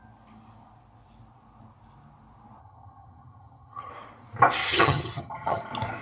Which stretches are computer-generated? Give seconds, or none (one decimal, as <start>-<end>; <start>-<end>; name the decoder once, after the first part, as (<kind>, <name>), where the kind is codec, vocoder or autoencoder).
2.6-3.9 (vocoder, HiFi-GAN); 4.6-5.6